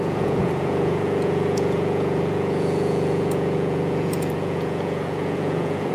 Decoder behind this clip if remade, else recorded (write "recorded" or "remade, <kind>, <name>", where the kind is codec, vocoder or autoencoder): remade, vocoder, Vocos